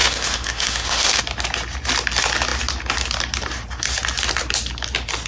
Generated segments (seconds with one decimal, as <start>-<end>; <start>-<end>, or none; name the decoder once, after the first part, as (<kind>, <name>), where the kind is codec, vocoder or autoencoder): 0.0-1.2 (autoencoder, DAC-VAE)

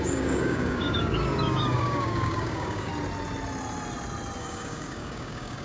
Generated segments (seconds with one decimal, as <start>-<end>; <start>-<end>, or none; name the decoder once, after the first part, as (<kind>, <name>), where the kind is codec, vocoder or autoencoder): 0.0-2.9 (codec, DAC); 4.4-5.6

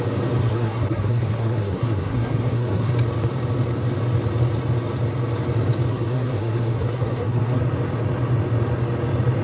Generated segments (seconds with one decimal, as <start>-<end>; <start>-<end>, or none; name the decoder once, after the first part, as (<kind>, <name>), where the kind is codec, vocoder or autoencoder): 0.4-2.9 (codec, SNAC); 5.9-7.6

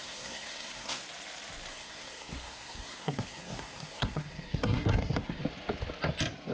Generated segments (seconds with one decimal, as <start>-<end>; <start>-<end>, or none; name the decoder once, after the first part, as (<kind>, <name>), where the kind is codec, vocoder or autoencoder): 0.0-1.0 (codec, SNAC); 1.7-5.4

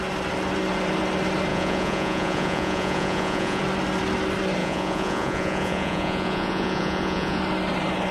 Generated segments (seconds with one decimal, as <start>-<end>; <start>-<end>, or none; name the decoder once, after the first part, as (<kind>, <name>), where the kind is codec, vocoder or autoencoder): 1.5-3.6 (vocoder, Vocos); 4.6-7.4

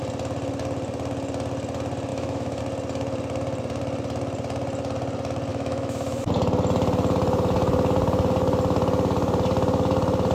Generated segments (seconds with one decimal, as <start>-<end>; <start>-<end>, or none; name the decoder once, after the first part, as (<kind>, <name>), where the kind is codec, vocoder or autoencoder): 2.1-2.6 (autoencoder, DAC-VAE); 5.5-6.3

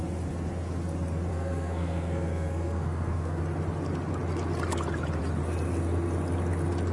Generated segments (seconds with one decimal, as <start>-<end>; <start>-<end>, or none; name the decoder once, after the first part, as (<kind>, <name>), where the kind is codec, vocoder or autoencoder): 1.3-3.4 (codec, SNAC)